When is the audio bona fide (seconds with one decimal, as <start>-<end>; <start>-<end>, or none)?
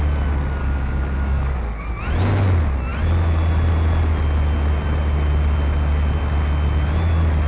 0.0-0.6; 1.9-7.5